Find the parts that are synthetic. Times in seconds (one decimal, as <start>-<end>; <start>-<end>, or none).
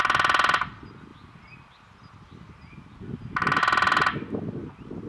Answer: none